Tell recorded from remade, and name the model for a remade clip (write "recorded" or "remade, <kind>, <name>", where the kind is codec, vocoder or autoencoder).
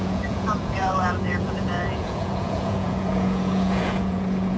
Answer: remade, vocoder, Vocos